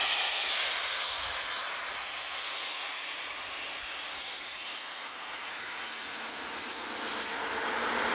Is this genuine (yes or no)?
yes